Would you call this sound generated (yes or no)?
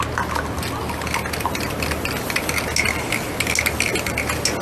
no